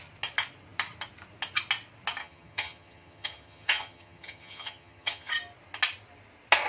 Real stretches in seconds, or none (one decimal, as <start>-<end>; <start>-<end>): 0.0-2.2; 5.3-6.7